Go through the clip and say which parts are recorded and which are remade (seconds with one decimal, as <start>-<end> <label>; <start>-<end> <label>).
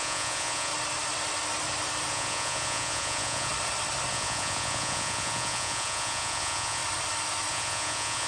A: 0.0-0.7 remade; 0.7-2.1 recorded; 2.1-3.5 remade; 3.5-4.1 recorded; 4.1-6.8 remade; 6.8-7.5 recorded; 7.5-8.3 remade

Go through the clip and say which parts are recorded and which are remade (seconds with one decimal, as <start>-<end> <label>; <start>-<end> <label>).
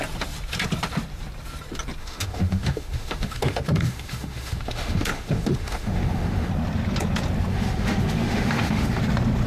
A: 0.0-2.0 recorded; 2.0-6.5 remade; 6.5-7.5 recorded; 7.5-9.0 remade; 9.0-9.5 recorded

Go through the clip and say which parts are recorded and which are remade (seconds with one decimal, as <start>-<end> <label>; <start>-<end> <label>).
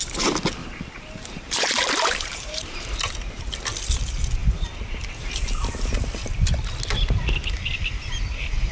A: 0.0-0.6 recorded; 0.6-3.1 remade; 3.1-8.7 recorded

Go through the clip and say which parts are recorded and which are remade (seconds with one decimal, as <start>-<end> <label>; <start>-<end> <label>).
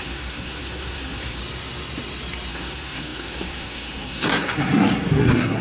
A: 0.0-1.4 remade; 1.4-2.5 recorded; 2.5-5.6 remade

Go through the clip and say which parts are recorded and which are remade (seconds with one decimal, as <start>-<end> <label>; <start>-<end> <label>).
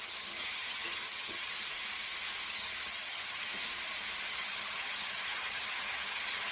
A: 0.0-1.5 remade; 1.5-2.5 recorded; 2.5-3.5 remade; 3.5-4.3 recorded; 4.3-6.5 remade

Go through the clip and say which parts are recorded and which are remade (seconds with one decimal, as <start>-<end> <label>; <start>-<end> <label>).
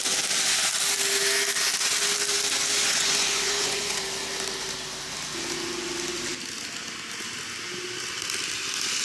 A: 0.0-2.7 recorded; 2.7-4.0 remade; 4.0-9.0 recorded